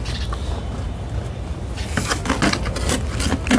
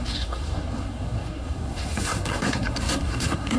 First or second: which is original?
first